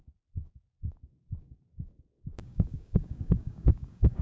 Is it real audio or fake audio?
fake